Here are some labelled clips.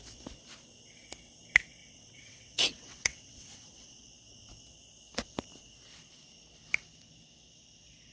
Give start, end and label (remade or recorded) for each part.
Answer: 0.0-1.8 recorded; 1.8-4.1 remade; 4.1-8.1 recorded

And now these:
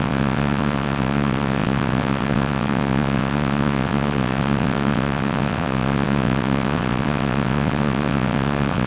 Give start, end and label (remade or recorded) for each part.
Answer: 0.0-8.9 remade

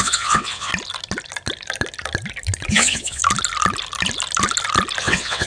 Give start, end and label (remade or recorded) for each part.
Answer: 0.0-0.7 remade; 0.7-2.7 recorded; 2.7-3.2 remade; 3.2-5.0 recorded; 5.0-5.5 remade

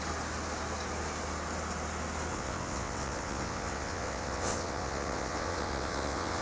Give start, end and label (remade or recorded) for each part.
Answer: 0.0-2.3 recorded; 2.3-6.4 remade

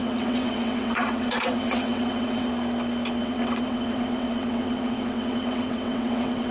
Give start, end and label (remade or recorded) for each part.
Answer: 0.0-2.5 remade; 2.5-3.2 recorded; 3.2-6.5 remade

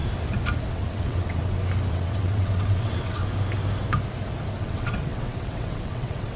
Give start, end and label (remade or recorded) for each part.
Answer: 0.0-0.7 recorded; 0.7-1.4 remade; 1.4-1.9 recorded; 1.9-3.2 remade; 3.2-4.6 recorded; 4.6-6.4 remade